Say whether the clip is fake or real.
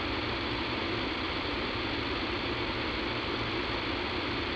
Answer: real